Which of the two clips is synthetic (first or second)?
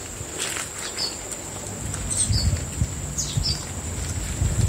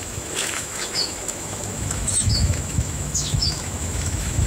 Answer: second